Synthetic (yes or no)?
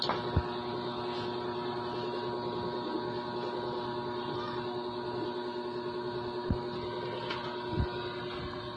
no